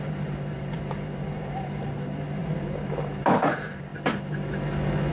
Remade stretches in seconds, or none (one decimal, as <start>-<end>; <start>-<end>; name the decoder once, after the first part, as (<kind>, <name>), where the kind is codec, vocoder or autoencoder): 0.0-3.9 (vocoder, BigVGAN v2)